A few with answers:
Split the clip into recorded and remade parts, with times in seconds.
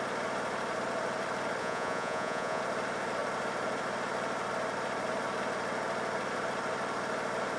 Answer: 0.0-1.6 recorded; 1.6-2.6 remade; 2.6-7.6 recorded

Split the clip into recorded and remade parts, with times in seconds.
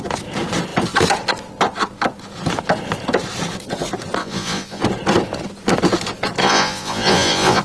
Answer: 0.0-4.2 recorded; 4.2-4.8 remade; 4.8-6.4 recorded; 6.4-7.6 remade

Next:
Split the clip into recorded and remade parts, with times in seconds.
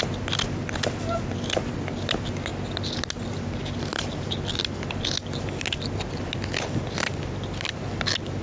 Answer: 0.0-8.4 recorded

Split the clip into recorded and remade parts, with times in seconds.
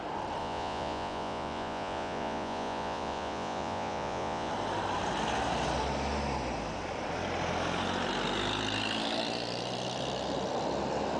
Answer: 0.0-0.4 recorded; 0.4-4.5 remade; 4.5-11.2 recorded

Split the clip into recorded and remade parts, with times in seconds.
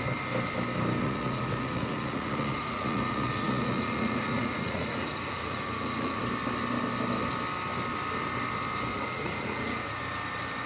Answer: 0.0-1.0 recorded; 1.0-6.2 remade; 6.2-8.9 recorded; 8.9-10.0 remade; 10.0-10.7 recorded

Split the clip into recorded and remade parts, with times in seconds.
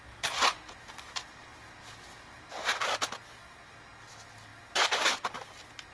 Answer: 0.0-5.9 recorded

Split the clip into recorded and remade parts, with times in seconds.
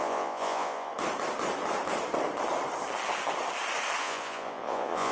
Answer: 0.0-0.9 remade; 0.9-4.0 recorded; 4.0-5.1 remade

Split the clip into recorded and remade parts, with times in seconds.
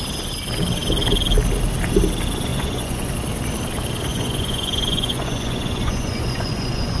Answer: 0.0-2.5 recorded; 2.5-3.1 remade; 3.1-4.1 recorded; 4.1-7.0 remade